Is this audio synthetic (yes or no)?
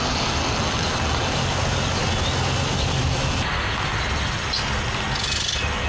no